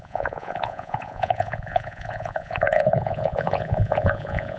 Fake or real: fake